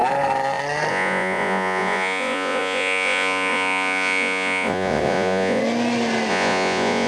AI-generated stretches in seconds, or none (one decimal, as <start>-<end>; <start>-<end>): 0.9-5.6; 6.3-7.1